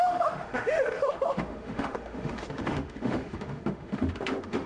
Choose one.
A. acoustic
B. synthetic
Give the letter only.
B